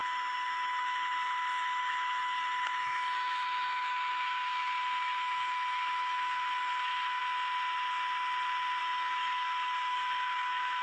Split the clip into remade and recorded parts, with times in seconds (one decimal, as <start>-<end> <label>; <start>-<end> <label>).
0.0-7.2 remade; 7.2-8.8 recorded; 8.8-10.8 remade